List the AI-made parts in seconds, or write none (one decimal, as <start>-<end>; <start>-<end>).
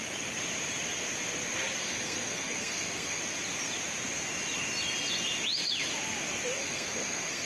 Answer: 1.8-3.2; 6.6-7.5